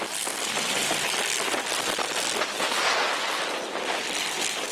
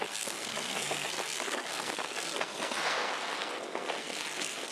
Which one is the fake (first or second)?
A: second